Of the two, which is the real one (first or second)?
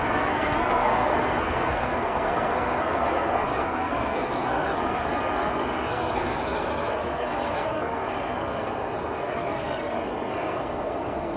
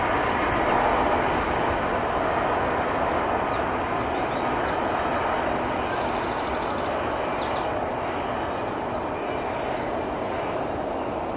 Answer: second